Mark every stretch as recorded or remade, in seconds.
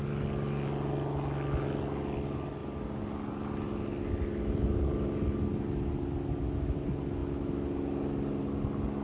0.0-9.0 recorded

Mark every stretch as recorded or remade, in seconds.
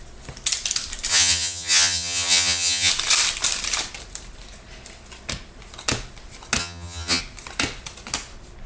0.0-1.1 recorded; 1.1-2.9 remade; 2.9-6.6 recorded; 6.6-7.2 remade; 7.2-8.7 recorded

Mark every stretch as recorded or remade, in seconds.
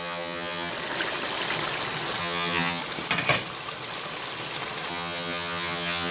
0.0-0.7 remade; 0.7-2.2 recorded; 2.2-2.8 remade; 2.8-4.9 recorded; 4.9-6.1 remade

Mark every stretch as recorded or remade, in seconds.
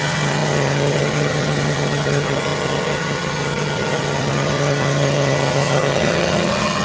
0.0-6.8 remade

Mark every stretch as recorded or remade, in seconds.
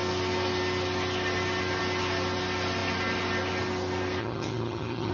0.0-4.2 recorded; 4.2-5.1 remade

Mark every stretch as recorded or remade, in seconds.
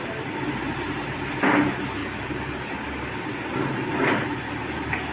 0.0-5.1 recorded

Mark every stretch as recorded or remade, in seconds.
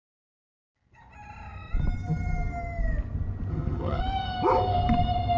0.0-3.5 recorded; 3.5-4.0 remade; 4.0-5.4 recorded